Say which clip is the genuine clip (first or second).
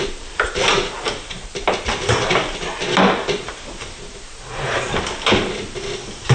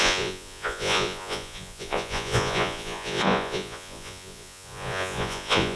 first